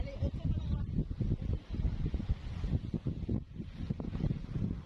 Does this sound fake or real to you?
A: real